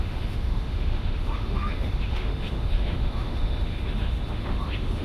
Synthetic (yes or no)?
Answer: yes